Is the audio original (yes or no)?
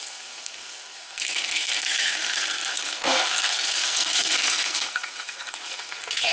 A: no